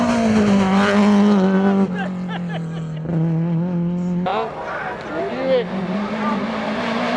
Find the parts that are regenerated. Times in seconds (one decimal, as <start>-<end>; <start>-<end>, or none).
4.3-5.1